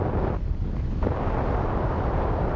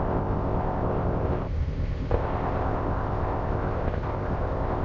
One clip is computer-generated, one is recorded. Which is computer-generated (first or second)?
second